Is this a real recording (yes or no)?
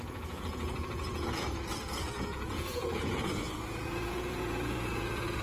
no